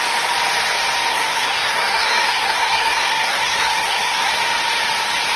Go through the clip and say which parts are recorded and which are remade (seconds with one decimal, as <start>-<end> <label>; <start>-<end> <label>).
0.0-1.1 recorded; 1.1-4.3 remade; 4.3-5.4 recorded